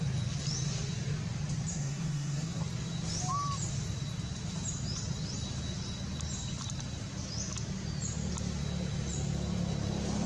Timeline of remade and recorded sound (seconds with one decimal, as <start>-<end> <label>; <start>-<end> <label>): 0.0-1.7 recorded; 1.7-2.6 remade; 2.6-10.3 recorded